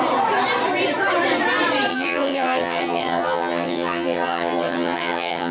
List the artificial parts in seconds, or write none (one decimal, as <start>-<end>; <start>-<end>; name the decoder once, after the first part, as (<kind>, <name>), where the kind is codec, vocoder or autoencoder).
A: 1.9-5.5 (vocoder, HiFi-GAN)